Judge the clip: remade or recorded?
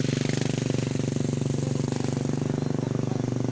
recorded